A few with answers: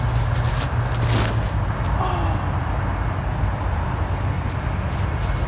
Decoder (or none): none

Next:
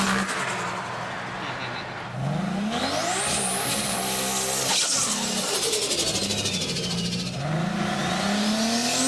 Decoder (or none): none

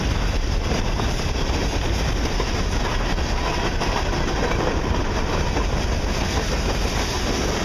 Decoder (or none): none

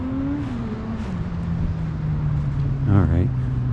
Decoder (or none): none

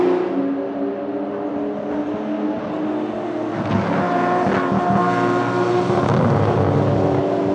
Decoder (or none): none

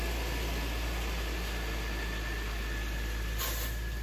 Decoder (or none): none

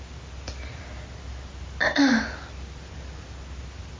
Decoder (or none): none